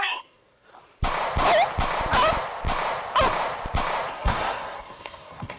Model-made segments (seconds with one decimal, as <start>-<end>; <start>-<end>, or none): 0.0-0.7; 4.1-5.6